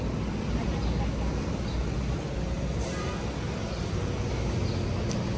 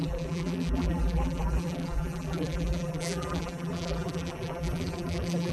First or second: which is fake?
second